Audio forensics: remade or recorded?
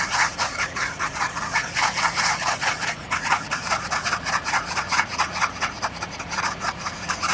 remade